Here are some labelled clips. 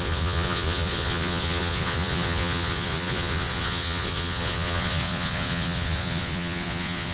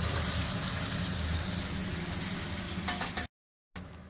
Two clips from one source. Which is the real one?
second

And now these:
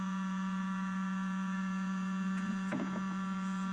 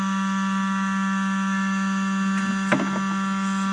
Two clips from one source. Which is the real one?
second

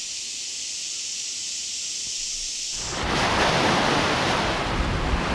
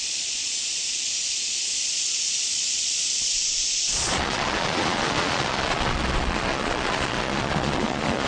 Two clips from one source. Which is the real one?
first